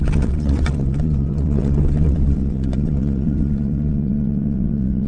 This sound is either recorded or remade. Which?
remade